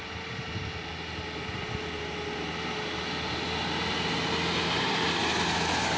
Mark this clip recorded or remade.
recorded